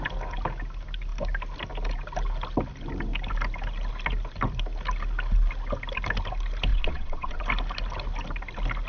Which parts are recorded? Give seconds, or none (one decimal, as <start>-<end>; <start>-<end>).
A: 0.0-6.7; 7.4-8.9